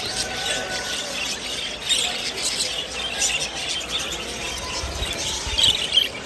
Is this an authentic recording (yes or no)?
yes